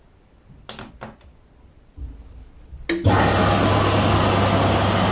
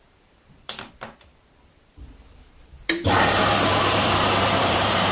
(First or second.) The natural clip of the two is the first